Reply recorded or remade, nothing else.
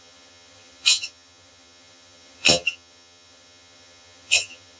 remade